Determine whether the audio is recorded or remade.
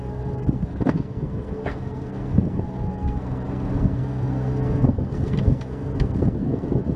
remade